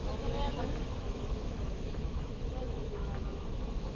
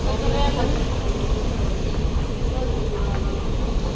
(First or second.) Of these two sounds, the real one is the second